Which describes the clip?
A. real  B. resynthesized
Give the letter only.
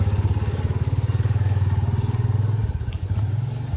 B